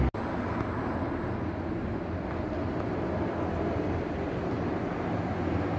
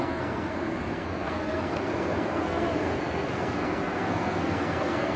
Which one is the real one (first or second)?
first